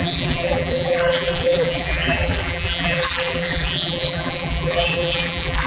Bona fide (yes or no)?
no